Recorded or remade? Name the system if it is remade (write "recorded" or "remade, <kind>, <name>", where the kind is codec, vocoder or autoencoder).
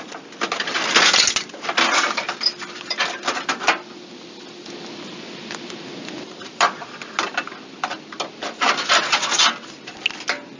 recorded